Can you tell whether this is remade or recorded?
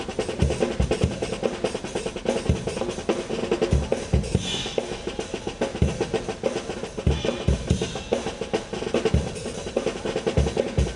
recorded